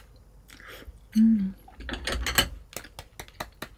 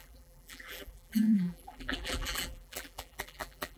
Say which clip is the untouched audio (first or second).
first